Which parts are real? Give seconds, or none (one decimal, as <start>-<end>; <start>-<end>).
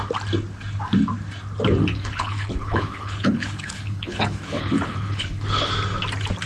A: 0.0-1.8; 5.7-6.5